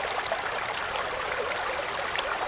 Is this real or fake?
real